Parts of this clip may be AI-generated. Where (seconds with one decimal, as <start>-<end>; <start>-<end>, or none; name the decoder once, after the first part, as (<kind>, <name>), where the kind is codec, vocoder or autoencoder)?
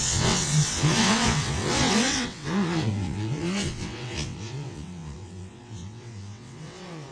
0.0-7.1 (vocoder, WaveNeXt)